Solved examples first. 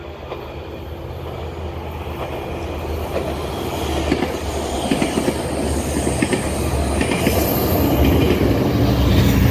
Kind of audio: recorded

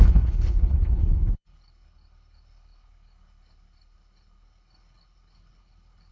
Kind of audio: remade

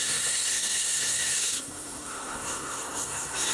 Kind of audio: remade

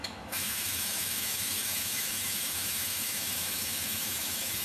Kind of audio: remade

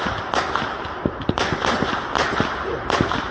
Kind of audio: recorded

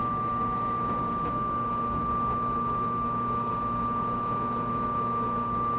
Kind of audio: remade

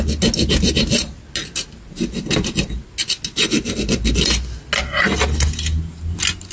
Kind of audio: recorded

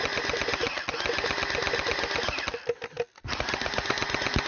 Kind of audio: recorded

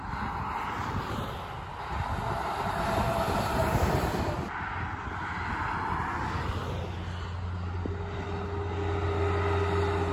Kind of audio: recorded